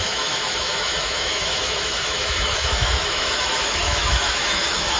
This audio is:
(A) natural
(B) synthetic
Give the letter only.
B